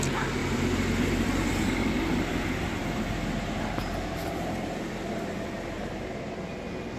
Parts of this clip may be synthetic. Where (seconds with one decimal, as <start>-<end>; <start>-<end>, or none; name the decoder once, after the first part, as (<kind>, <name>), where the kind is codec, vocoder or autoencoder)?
0.4-1.7 (vocoder, BigVGAN v2); 2.3-6.1

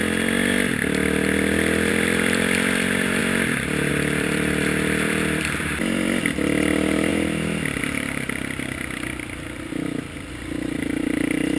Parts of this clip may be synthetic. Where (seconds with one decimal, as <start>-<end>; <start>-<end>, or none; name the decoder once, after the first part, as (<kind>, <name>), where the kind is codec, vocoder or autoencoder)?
1.9-7.1 (vocoder, BigVGAN v2); 7.8-11.6

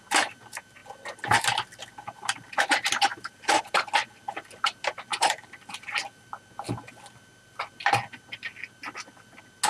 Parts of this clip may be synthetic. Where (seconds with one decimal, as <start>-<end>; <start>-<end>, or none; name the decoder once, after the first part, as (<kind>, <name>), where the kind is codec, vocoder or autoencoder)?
3.1-3.6 (vocoder, BigVGAN v2); 5.1-5.9

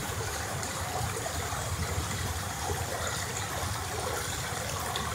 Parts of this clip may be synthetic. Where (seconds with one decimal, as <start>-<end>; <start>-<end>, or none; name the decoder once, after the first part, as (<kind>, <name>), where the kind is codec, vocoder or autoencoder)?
0.0-3.1 (vocoder, BigVGAN v2)